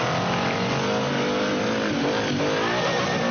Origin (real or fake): real